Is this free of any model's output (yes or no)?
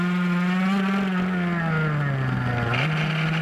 yes